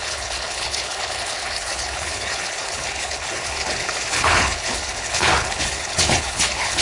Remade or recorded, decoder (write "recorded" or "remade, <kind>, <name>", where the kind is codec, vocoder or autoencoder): remade, codec, HILCodec